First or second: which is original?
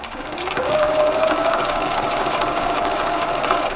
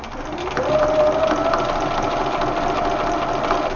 second